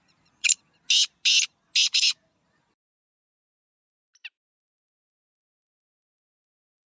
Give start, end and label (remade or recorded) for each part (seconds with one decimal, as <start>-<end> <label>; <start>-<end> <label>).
0.0-0.6 remade; 0.6-1.8 recorded; 1.8-2.7 remade; 2.7-6.9 recorded